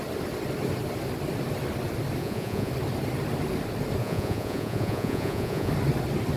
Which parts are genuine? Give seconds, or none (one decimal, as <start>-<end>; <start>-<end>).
0.0-2.2; 2.7-4.0; 5.7-6.4